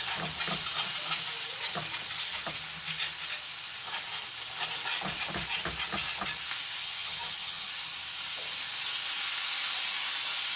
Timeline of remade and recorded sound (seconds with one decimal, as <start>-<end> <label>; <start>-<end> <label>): 0.0-6.8 recorded; 6.8-7.7 remade; 7.7-10.6 recorded